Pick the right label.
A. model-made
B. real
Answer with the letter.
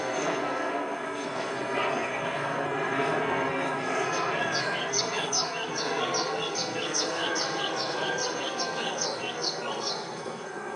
A